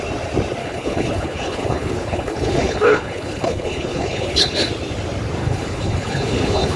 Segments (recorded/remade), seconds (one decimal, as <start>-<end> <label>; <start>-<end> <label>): 0.0-0.6 recorded; 0.6-4.7 remade; 4.7-5.4 recorded; 5.4-6.8 remade